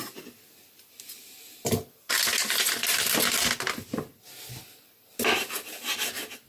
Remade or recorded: recorded